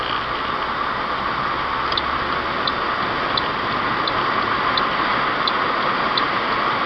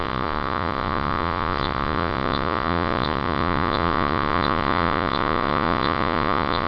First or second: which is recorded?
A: first